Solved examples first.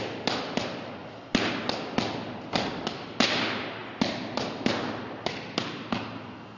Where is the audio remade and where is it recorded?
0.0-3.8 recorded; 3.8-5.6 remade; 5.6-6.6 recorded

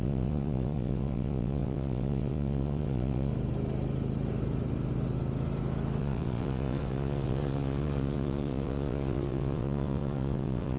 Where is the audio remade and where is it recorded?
0.0-3.3 remade; 3.3-6.0 recorded; 6.0-10.8 remade

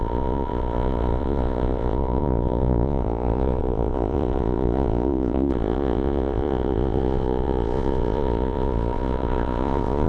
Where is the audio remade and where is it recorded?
0.0-10.1 remade

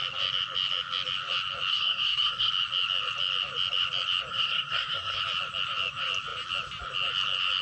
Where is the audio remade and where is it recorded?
0.0-1.7 recorded; 1.7-2.5 remade; 2.5-4.3 recorded; 4.3-5.2 remade; 5.2-7.6 recorded

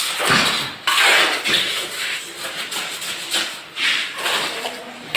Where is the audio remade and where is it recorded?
0.0-1.6 recorded; 1.6-2.2 remade; 2.2-5.2 recorded

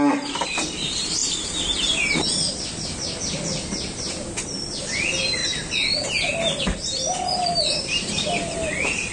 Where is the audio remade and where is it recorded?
0.0-1.2 remade; 1.2-4.8 recorded; 4.8-5.4 remade; 5.4-6.6 recorded; 6.6-9.1 remade

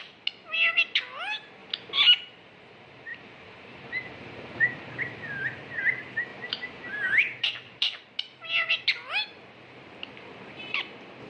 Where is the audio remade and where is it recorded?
0.0-3.1 recorded; 3.1-5.0 remade; 5.0-6.3 recorded; 6.3-8.0 remade; 8.0-11.3 recorded